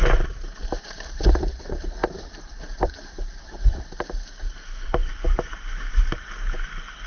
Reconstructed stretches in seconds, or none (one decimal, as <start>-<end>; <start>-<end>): 2.0-3.8; 5.0-5.7

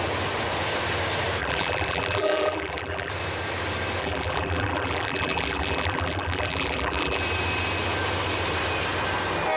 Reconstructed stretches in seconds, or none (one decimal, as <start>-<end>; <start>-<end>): 1.4-3.1; 4.0-7.2

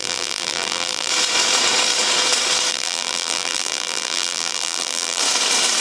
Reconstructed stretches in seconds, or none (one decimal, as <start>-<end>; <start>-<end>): 0.0-1.1; 2.7-5.2